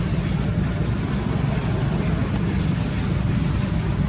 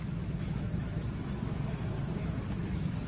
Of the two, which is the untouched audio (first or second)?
first